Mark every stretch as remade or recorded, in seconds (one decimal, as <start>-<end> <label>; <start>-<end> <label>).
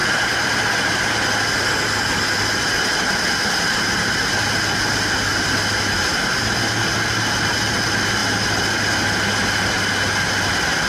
0.0-0.6 remade; 0.6-10.9 recorded